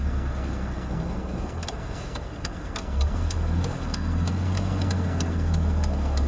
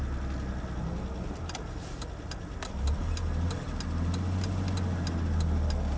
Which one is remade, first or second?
first